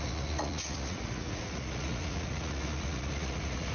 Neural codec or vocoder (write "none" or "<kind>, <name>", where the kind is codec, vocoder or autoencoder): vocoder, Vocos